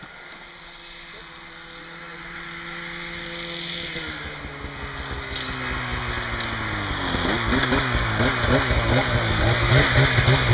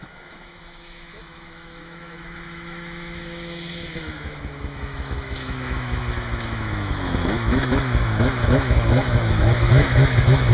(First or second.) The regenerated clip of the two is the second